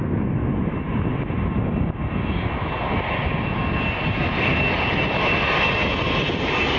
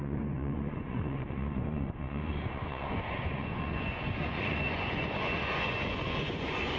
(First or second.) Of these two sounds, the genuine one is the first